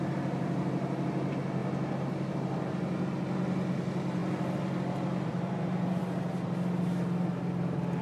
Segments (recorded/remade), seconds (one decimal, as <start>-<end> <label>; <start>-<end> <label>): 0.0-4.2 recorded; 4.2-6.0 remade; 6.0-8.0 recorded